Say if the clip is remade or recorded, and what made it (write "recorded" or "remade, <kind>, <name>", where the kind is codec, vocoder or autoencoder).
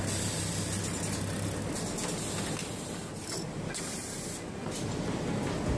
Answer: recorded